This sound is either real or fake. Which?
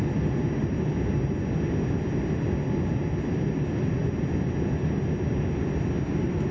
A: real